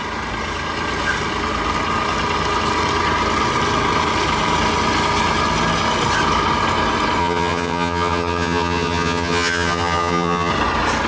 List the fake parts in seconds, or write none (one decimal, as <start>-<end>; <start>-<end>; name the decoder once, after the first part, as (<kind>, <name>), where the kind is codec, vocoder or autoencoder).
7.2-10.5 (vocoder, HiFi-GAN)